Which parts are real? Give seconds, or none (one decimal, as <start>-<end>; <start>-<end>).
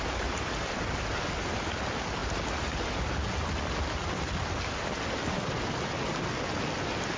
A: 0.0-7.2